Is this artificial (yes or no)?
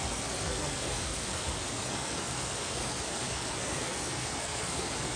yes